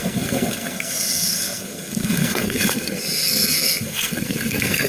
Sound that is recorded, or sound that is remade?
remade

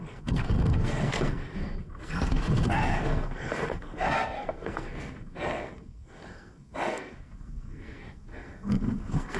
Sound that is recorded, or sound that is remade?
remade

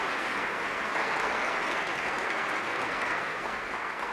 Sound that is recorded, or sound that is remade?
remade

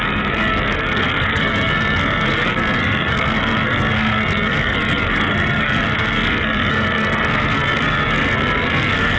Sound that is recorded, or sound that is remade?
remade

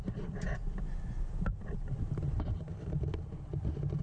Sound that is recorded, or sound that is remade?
recorded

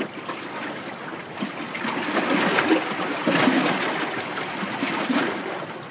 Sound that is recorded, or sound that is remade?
recorded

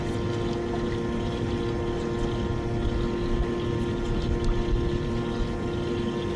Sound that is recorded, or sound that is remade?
recorded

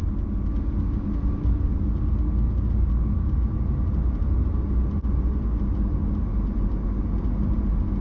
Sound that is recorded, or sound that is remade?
recorded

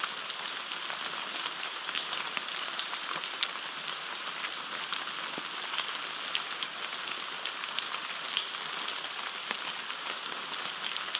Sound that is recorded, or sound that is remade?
recorded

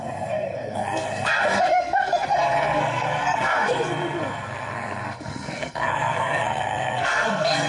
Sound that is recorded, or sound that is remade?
remade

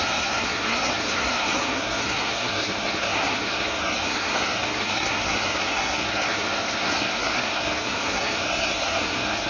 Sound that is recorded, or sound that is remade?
remade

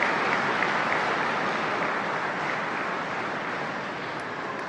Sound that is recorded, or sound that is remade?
recorded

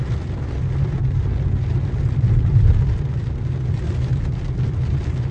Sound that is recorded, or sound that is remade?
recorded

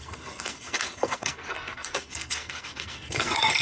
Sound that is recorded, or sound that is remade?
remade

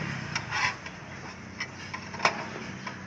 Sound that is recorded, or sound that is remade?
recorded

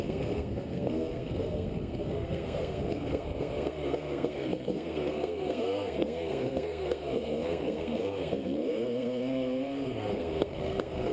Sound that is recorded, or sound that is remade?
remade